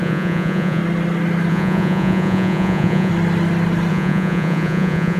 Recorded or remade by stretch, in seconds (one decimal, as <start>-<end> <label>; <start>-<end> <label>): 0.0-0.8 remade; 0.8-1.5 recorded; 1.5-3.1 remade; 3.1-3.9 recorded; 3.9-5.2 remade